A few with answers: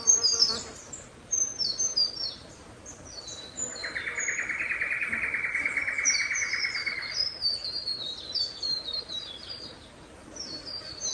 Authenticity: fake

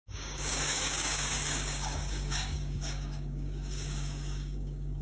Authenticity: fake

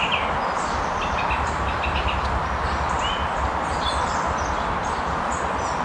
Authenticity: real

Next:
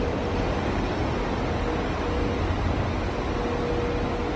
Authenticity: real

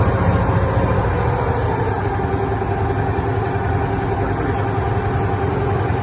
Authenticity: real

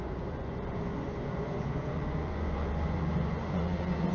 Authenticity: fake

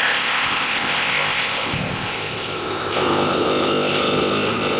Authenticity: fake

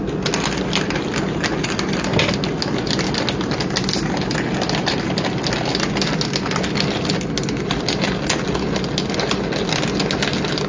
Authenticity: real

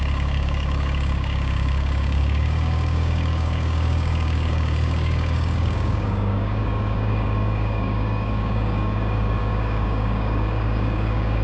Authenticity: fake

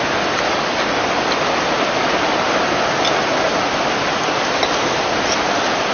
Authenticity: real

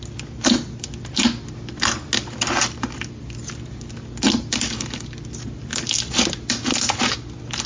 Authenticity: real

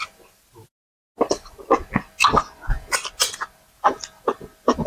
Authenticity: real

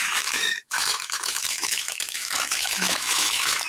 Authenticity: fake